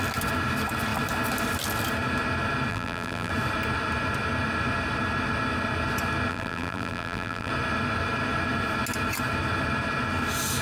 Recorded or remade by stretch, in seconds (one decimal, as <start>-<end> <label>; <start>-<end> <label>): 0.0-2.7 recorded; 2.7-3.3 remade; 3.3-6.3 recorded; 6.3-7.5 remade; 7.5-10.6 recorded